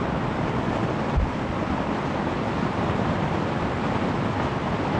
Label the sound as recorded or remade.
recorded